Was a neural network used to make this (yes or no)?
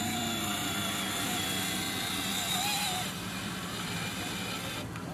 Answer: yes